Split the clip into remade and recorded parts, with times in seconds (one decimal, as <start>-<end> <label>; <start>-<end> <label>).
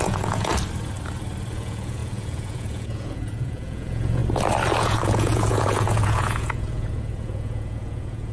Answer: 0.0-0.5 remade; 0.5-1.5 recorded; 1.5-4.2 remade; 4.2-4.8 recorded; 4.8-8.3 remade